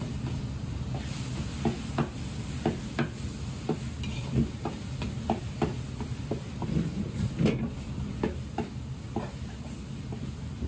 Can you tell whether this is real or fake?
real